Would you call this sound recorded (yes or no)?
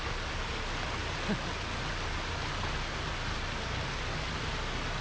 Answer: yes